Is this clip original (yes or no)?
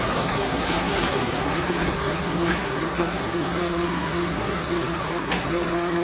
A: no